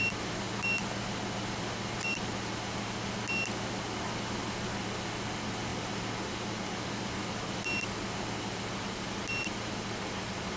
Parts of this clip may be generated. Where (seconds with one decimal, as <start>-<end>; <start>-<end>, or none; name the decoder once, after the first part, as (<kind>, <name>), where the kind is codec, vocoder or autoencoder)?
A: none